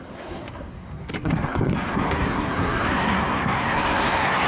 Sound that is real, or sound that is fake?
fake